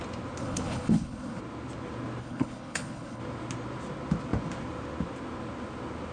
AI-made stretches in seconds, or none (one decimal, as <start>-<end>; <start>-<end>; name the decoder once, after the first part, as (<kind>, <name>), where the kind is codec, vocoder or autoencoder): 0.4-1.4 (codec, HILCodec); 2.2-3.2